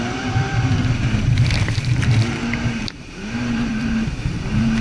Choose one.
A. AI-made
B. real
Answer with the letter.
A